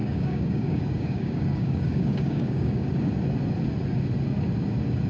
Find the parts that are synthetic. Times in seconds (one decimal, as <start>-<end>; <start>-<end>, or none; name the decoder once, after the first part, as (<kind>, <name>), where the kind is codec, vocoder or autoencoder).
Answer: 0.0-3.1 (codec, DAC)